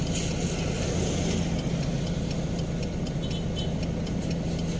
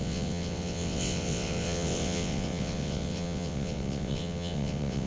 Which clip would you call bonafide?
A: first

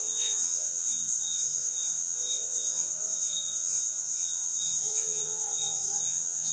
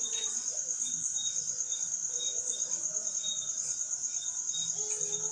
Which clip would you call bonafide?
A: second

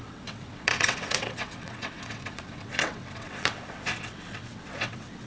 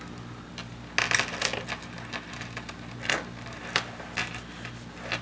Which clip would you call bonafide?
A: second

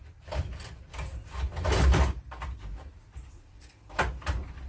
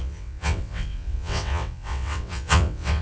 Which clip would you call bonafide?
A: first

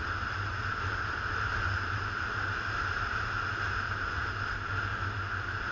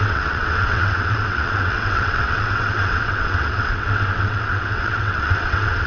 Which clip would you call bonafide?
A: first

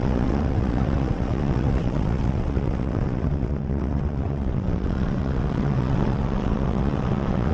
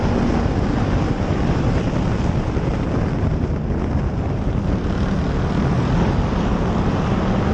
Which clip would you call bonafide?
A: second